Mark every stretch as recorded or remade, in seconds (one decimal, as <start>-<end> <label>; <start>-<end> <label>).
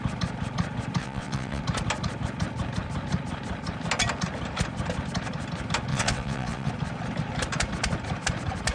0.0-1.0 recorded; 1.0-1.6 remade; 1.6-5.9 recorded; 5.9-6.7 remade; 6.7-8.7 recorded